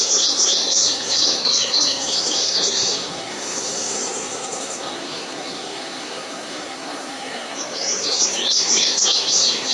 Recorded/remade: remade